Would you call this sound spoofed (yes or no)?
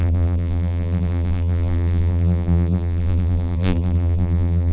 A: yes